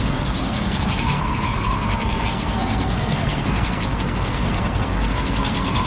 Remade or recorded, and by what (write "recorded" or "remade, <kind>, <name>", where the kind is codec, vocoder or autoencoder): remade, codec, SNAC